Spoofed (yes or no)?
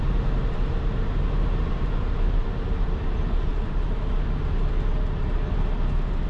no